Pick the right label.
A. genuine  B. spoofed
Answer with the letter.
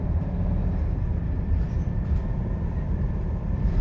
A